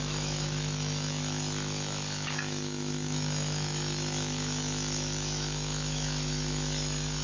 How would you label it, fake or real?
fake